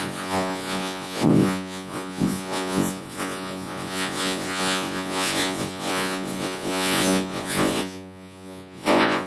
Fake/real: fake